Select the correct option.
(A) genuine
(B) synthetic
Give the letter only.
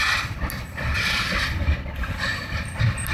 A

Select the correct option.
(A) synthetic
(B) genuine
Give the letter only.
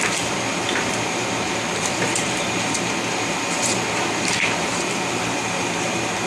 A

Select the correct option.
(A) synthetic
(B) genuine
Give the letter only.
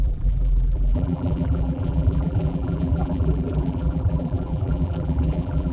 A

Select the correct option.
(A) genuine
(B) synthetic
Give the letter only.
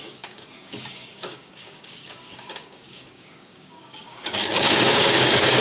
B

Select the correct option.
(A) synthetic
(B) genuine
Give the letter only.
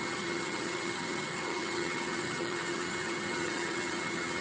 A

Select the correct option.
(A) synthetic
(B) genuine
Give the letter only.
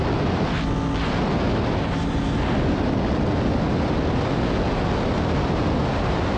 B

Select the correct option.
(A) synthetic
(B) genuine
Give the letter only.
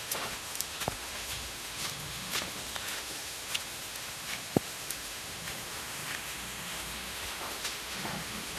A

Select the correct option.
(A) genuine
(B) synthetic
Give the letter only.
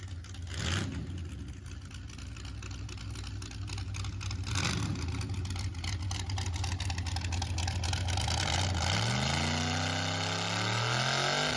A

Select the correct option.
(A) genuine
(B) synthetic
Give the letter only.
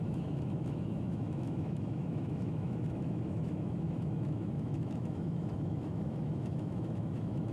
B